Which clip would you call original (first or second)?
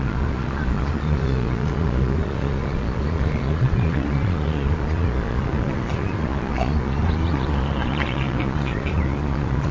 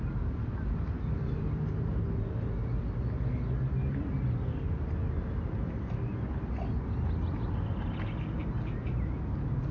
second